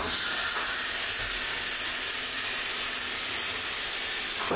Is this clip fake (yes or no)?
no